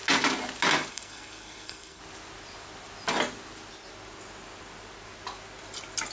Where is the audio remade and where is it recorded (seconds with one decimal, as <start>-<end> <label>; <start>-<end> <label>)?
0.0-0.9 recorded; 0.9-2.0 remade; 2.0-6.1 recorded